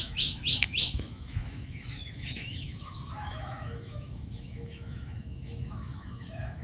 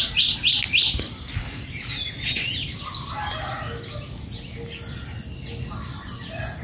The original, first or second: second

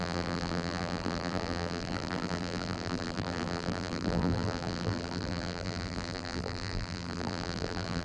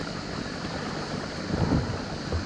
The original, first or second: second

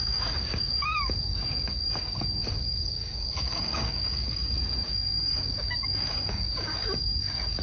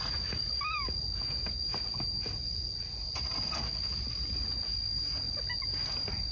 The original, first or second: second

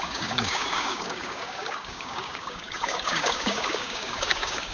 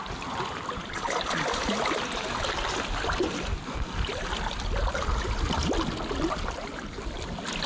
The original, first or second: second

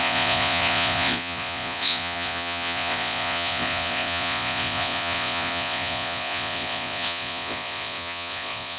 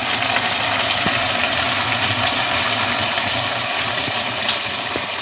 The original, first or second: second